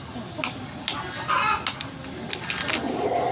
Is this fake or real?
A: real